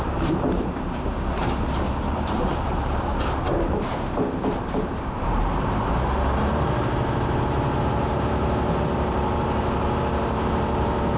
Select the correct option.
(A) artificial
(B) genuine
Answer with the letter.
A